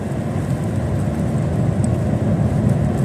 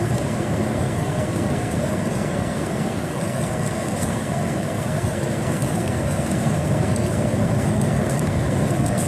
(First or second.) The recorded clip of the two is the first